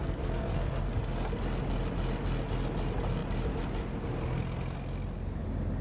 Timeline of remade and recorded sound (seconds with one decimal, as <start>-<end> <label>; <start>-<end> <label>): 0.0-0.9 remade; 0.9-5.8 recorded